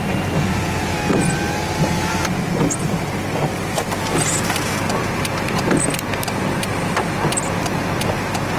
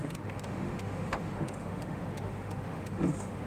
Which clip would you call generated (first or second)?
second